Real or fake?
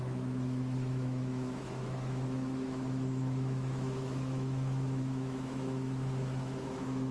fake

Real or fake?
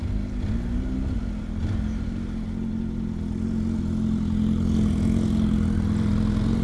real